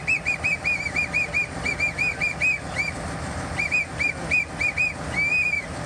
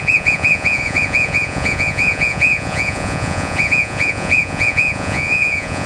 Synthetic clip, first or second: second